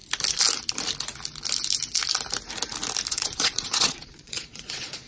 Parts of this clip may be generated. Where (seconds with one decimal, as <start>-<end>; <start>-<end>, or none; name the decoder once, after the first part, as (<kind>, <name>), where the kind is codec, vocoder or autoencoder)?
3.1-5.1 (vocoder, Vocos)

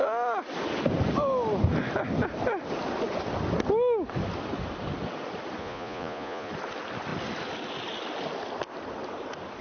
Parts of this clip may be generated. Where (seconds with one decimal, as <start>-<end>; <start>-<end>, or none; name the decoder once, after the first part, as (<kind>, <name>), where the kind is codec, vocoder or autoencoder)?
5.6-6.5 (vocoder, Vocos)

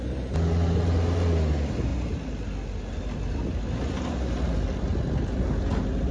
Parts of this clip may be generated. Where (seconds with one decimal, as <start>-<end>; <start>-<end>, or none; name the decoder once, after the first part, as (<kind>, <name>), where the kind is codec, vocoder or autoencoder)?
none

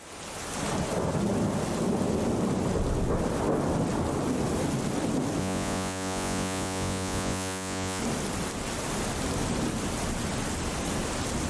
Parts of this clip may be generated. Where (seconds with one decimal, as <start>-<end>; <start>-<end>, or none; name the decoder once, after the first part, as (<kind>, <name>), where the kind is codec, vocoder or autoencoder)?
5.4-8.0 (vocoder, Vocos)

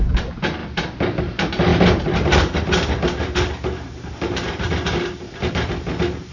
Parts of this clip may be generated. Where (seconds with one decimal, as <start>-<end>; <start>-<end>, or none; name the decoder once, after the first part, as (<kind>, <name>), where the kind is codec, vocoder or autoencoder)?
0.0-0.6 (vocoder, BigVGAN v2); 1.2-6.3

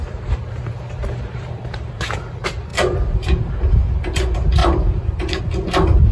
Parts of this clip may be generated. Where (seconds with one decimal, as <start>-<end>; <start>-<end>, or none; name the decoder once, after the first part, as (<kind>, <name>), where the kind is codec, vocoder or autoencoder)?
0.0-2.2 (vocoder, BigVGAN v2); 2.7-3.5; 4.6-5.4

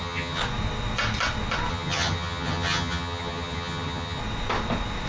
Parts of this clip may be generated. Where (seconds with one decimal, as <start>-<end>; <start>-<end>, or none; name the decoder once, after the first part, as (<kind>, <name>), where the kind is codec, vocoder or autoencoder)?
0.0-0.4 (vocoder, HiFi-GAN); 1.7-4.2